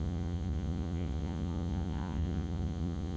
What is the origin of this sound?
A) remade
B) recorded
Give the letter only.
A